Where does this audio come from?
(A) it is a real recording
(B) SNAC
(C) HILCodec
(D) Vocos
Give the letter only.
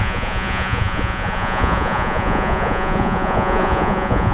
D